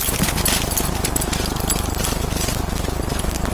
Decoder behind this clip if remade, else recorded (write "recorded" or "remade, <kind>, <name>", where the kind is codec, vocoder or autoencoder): recorded